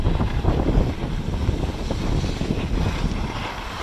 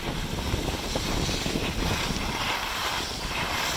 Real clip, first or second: first